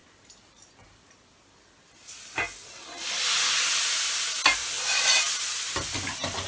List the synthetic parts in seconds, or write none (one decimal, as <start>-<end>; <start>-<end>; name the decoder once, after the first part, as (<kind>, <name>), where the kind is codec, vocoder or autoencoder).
4.6-5.3 (vocoder, BigVGAN v2)